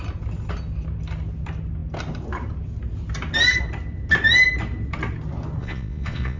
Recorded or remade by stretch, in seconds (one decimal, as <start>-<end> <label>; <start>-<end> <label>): 0.0-5.6 recorded; 5.6-6.4 remade